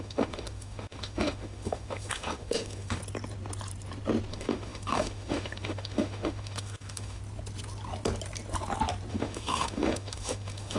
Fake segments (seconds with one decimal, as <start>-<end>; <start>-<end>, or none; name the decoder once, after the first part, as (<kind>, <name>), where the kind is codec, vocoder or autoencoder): 0.0-3.0 (autoencoder, DAC-VAE); 4.3-7.2; 9.1-10.8